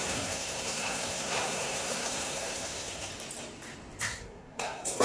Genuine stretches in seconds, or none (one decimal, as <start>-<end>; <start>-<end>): 3.1-4.0